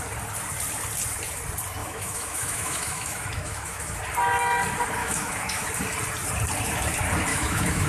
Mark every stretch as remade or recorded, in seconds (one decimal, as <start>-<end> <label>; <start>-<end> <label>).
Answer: 0.0-1.8 recorded; 1.8-4.0 remade; 4.0-5.0 recorded; 5.0-5.7 remade; 5.7-7.3 recorded; 7.3-7.9 remade